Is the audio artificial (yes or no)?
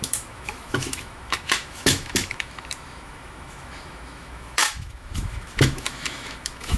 yes